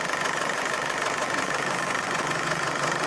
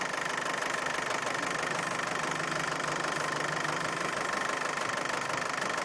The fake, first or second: first